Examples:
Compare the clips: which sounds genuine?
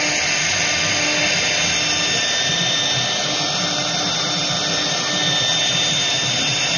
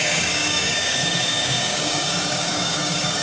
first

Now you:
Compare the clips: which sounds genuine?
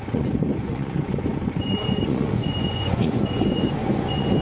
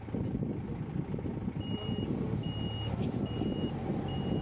second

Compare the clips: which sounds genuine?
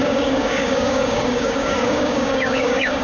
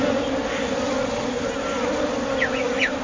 second